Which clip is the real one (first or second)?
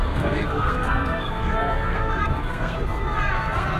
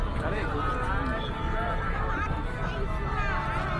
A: second